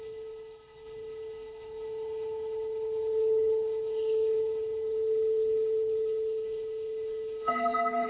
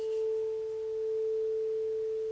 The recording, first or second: second